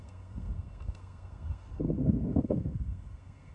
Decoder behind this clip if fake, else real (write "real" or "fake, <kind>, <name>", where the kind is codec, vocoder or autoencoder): fake, codec, SNAC